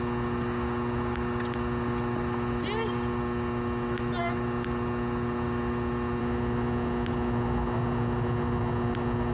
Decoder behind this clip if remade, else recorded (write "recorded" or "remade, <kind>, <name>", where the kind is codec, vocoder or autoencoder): recorded